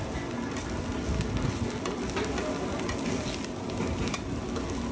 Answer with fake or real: real